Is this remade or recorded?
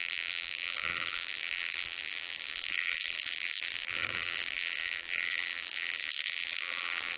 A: remade